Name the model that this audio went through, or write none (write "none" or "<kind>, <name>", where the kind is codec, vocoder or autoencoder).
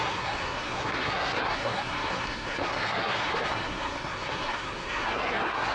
codec, SNAC